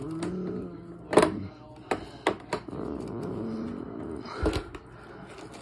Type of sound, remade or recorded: recorded